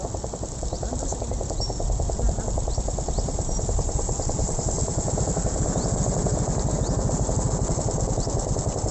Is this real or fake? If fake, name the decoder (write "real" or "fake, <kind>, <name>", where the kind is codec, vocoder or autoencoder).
real